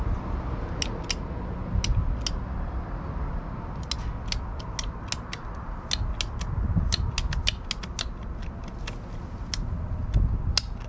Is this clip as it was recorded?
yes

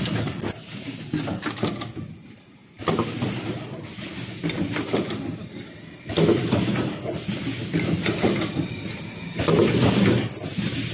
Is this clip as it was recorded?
yes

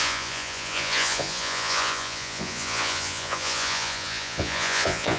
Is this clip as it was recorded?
no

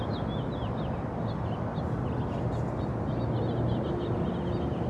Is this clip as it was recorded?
yes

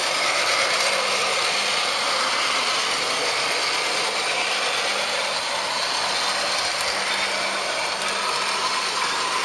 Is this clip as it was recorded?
yes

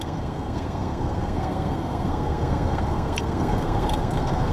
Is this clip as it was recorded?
no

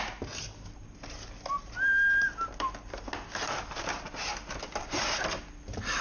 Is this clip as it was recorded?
yes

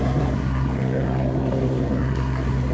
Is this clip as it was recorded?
no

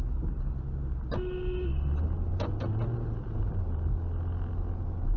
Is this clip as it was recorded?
yes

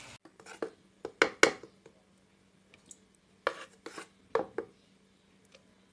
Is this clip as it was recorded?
yes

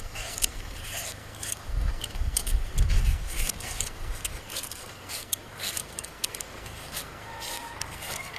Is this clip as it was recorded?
no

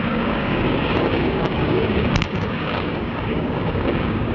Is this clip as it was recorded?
no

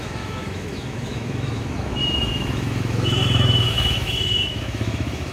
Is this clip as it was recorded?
no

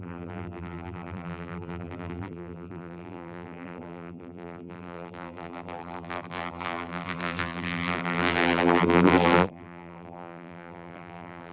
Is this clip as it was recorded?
no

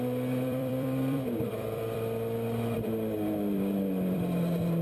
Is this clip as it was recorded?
no